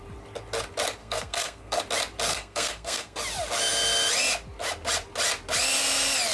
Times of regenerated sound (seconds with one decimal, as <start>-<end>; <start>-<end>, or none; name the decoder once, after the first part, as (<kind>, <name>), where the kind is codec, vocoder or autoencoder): 1.0-1.8 (codec, SNAC); 2.3-3.2